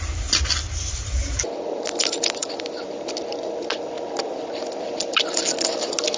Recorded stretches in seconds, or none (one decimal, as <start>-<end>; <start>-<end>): 0.0-6.2